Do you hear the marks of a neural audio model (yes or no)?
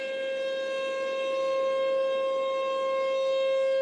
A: no